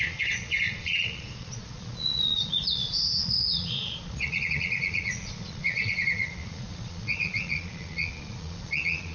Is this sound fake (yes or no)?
yes